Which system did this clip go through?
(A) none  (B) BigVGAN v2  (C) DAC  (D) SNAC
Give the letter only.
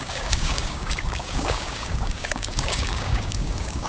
C